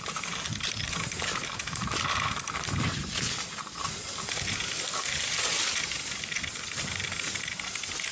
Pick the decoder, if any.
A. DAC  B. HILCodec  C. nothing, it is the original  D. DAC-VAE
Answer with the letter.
C